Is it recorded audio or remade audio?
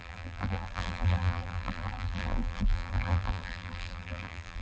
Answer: remade